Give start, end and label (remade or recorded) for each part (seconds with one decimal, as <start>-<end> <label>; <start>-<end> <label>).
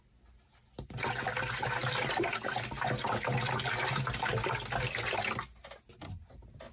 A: 0.0-6.7 recorded